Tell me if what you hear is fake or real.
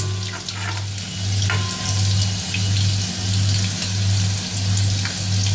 real